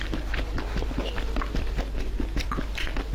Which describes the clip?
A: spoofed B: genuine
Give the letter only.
B